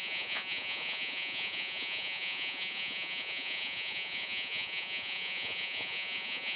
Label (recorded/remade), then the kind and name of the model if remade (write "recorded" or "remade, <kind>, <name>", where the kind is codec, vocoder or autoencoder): remade, vocoder, Vocos